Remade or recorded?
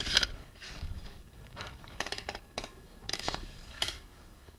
remade